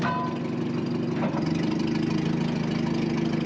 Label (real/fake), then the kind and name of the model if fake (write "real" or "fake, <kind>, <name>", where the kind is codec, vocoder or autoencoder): real